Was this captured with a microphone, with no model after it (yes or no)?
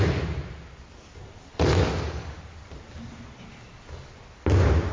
yes